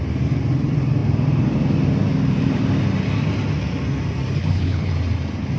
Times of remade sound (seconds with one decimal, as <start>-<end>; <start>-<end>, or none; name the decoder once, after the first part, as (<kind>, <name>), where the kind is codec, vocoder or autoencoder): 4.4-4.9 (codec, HILCodec)